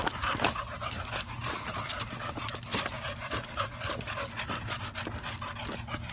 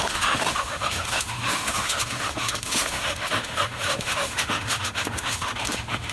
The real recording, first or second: first